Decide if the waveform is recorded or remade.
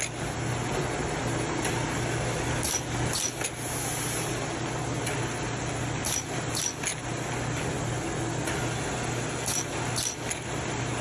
recorded